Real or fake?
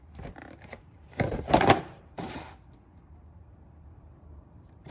fake